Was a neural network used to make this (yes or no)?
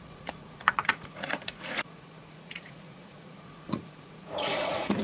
yes